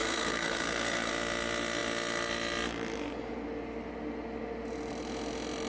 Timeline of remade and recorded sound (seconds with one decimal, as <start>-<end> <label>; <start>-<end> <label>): 0.0-1.1 remade; 1.1-5.7 recorded